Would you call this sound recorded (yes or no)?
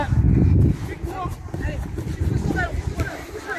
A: yes